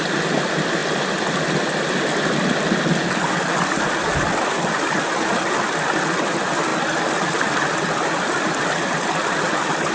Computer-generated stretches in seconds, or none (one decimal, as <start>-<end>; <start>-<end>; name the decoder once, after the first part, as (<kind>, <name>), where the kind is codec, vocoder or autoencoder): none